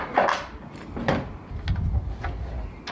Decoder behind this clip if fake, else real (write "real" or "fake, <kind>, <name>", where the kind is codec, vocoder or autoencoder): real